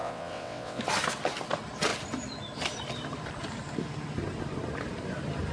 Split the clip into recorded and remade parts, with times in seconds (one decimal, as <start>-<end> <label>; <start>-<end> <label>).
0.0-0.8 remade; 0.8-5.5 recorded